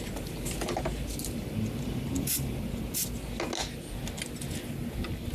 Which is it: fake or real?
real